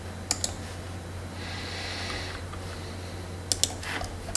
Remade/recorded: recorded